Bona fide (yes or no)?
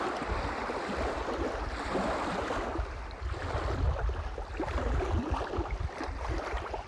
yes